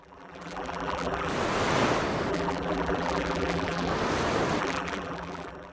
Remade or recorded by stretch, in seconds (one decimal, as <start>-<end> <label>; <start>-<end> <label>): 0.0-1.3 remade; 1.3-2.3 recorded; 2.3-3.9 remade; 3.9-4.6 recorded; 4.6-5.7 remade